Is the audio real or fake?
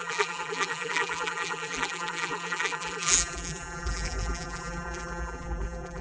fake